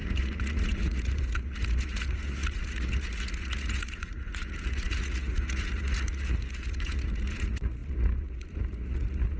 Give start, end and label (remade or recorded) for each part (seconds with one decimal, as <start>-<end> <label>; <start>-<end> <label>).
0.0-9.4 remade